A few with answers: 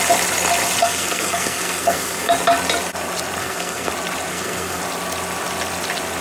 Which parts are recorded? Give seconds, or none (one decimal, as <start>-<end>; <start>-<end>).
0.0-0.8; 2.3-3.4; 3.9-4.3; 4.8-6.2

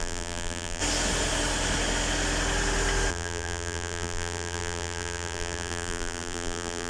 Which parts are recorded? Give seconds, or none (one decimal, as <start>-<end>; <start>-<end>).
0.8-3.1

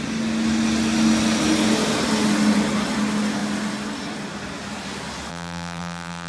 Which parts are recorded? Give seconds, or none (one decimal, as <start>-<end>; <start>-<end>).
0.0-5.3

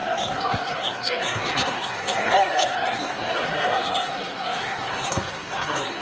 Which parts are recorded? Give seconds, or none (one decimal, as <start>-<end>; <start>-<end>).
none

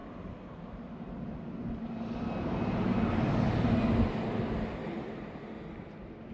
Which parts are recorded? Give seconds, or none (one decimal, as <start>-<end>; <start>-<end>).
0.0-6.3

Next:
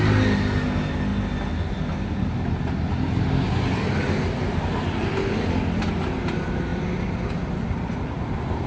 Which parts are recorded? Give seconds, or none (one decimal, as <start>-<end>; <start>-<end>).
0.0-8.7

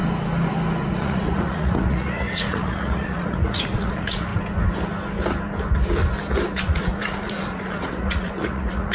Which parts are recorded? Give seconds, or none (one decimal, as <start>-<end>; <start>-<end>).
0.0-0.9; 4.3-6.3

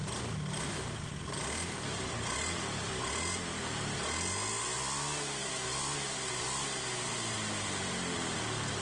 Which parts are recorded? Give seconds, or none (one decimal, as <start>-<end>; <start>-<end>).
0.0-8.8